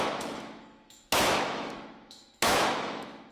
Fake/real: fake